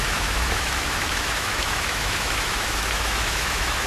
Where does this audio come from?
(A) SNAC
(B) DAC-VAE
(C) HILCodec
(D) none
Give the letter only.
B